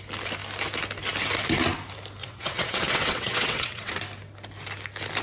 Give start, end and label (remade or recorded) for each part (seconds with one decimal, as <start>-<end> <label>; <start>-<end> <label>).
0.0-2.2 recorded; 2.2-4.0 remade; 4.0-5.2 recorded